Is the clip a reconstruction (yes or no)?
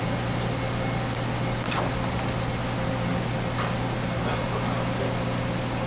no